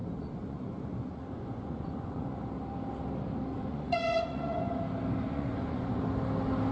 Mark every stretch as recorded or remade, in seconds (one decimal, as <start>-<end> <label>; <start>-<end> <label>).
0.0-2.4 remade; 2.4-3.5 recorded; 3.5-4.8 remade; 4.8-5.3 recorded; 5.3-6.0 remade; 6.0-6.7 recorded